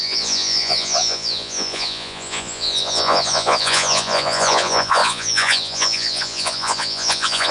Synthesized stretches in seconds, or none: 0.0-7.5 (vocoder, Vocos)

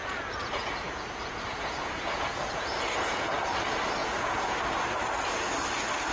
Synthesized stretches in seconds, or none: 0.0-3.4 (vocoder, Vocos); 4.0-4.6

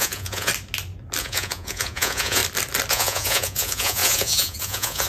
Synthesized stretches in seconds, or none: 0.0-0.5 (vocoder, Vocos); 1.2-2.4; 2.9-5.1

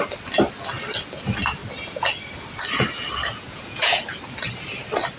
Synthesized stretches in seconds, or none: 3.3-4.0 (vocoder, Vocos)